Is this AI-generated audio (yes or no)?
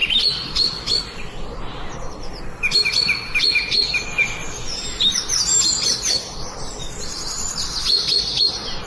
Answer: no